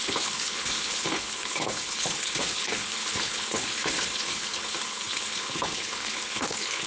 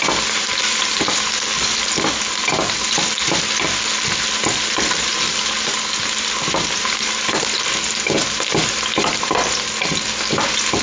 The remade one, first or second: first